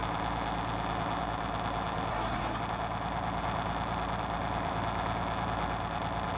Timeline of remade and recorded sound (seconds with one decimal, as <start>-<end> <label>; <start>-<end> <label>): 0.0-2.1 recorded; 2.1-2.6 remade; 2.6-6.4 recorded